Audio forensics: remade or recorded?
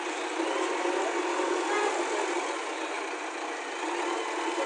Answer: recorded